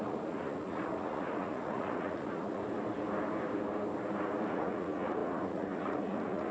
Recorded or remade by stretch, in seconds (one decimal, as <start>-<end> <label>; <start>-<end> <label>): 0.0-2.6 remade; 2.6-4.5 recorded; 4.5-6.5 remade